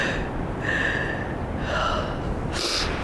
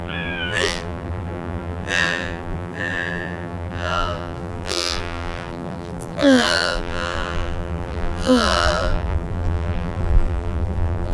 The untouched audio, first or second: first